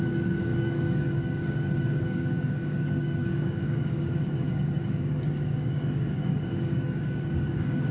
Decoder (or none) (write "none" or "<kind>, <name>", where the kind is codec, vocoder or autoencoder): codec, DAC